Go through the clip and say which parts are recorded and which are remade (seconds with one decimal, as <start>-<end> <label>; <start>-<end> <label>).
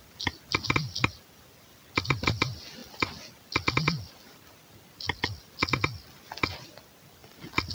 0.0-7.7 recorded